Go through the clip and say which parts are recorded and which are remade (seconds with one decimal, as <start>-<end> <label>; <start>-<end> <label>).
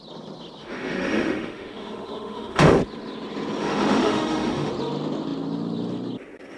0.0-0.6 recorded; 0.6-2.8 remade; 2.8-3.6 recorded; 3.6-4.7 remade; 4.7-6.6 recorded